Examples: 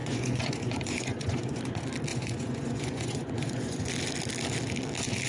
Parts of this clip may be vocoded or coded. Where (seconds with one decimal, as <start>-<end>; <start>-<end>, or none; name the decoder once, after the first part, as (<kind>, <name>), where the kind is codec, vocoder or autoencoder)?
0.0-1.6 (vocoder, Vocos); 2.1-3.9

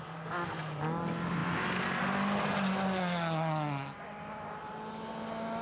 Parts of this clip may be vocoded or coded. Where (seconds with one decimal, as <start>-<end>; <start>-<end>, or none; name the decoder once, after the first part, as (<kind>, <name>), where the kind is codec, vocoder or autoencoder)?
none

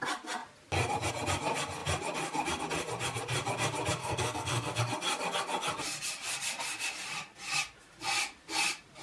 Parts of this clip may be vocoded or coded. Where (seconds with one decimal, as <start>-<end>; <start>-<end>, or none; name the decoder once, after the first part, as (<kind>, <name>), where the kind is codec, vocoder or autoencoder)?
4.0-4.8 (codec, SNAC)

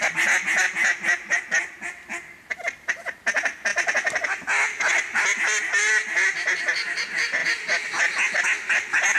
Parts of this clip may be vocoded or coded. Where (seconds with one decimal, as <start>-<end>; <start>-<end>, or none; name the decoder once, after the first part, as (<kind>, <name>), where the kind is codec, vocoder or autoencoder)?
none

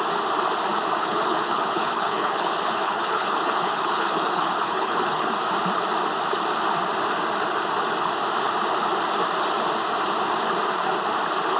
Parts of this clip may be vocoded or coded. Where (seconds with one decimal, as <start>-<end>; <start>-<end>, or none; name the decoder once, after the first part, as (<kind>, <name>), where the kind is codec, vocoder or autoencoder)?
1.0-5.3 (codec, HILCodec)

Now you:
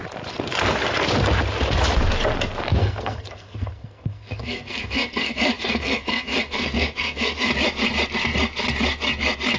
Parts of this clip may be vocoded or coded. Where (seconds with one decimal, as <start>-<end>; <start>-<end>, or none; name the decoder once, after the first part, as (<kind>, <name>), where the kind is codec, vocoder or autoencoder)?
2.8-7.5 (codec, SNAC)